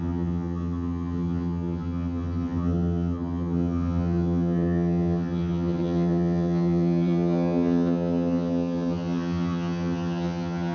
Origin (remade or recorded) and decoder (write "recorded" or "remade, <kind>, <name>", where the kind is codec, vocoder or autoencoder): remade, vocoder, HiFi-GAN